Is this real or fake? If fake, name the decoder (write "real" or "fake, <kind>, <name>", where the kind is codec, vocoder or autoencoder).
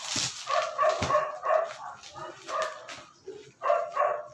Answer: real